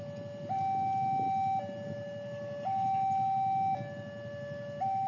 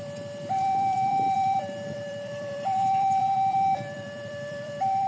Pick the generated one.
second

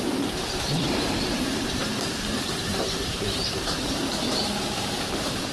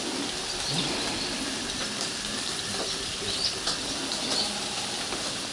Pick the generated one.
first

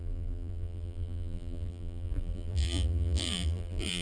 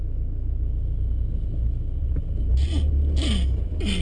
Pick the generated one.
first